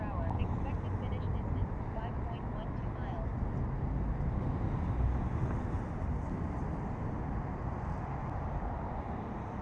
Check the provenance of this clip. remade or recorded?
recorded